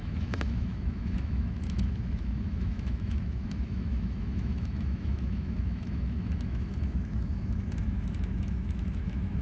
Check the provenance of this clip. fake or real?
fake